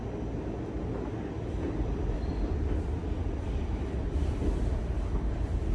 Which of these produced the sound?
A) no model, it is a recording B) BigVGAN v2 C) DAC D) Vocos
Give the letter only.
A